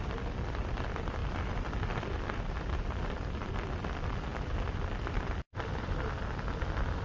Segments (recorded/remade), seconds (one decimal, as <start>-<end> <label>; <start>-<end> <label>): 0.0-1.2 recorded; 1.2-2.2 remade; 2.2-4.3 recorded; 4.3-6.2 remade; 6.2-7.0 recorded

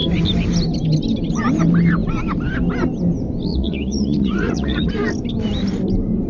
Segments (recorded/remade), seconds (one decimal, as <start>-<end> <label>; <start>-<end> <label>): 0.0-3.5 recorded; 3.5-4.9 remade; 4.9-6.3 recorded

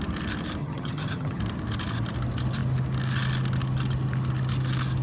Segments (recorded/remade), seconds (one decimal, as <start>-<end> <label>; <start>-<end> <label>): 0.0-0.6 recorded; 0.6-1.4 remade; 1.4-5.0 recorded

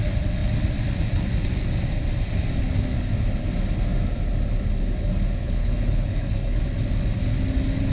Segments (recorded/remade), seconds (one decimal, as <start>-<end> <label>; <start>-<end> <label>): 0.0-5.4 recorded; 5.4-6.6 remade; 6.6-7.9 recorded

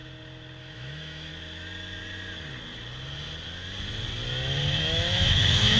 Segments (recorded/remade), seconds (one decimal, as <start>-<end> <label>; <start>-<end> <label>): 0.0-0.6 recorded; 0.6-1.3 remade; 1.3-4.8 recorded; 4.8-5.8 remade

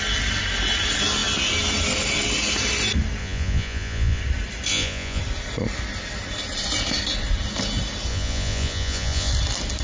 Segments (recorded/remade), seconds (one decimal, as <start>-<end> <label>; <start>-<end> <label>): 0.0-3.2 recorded; 3.2-4.2 remade; 4.2-4.7 recorded; 4.7-5.2 remade; 5.2-8.1 recorded; 8.1-9.3 remade; 9.3-9.8 recorded

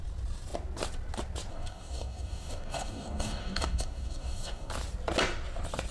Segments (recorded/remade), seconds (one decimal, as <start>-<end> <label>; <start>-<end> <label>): 0.0-1.5 recorded; 1.5-4.7 remade; 4.7-5.9 recorded